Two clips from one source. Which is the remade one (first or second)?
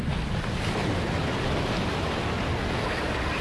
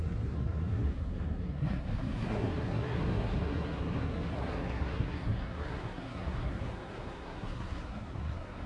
second